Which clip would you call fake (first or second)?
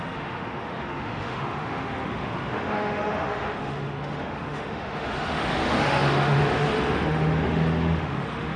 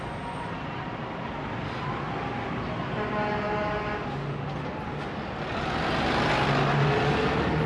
first